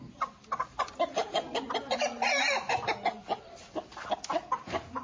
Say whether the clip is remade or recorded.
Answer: recorded